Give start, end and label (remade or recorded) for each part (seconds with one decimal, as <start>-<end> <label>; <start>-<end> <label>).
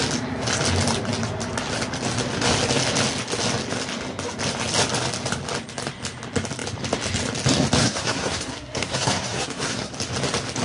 0.0-7.8 recorded; 7.8-9.9 remade; 9.9-10.6 recorded